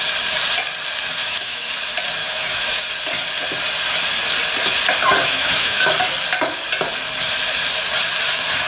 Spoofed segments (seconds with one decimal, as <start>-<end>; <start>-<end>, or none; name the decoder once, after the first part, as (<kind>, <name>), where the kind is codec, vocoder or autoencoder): 1.2-1.7 (autoencoder, DAC-VAE); 2.2-2.8; 5.2-5.9